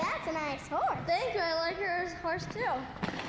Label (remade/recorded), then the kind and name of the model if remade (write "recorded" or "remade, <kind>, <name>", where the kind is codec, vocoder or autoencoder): recorded